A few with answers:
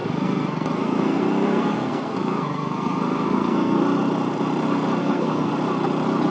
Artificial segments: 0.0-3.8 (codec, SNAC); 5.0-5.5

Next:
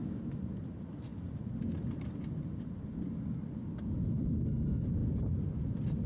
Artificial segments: none

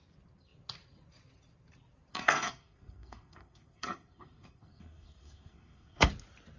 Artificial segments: 2.1-6.1 (codec, SNAC)

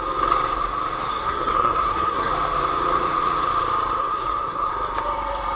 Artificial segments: 1.1-2.3 (codec, SNAC); 4.0-4.7